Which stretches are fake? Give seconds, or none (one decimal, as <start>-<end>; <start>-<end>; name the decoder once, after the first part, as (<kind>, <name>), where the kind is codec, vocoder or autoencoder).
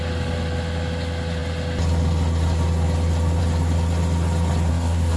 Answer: 4.7-5.2 (codec, SNAC)